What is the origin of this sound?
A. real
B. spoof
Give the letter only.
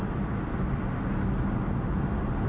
A